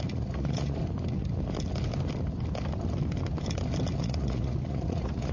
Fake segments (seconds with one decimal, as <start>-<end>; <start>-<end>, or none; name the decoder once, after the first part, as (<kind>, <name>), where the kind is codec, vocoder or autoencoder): 0.0-0.8 (vocoder, Vocos); 4.0-5.3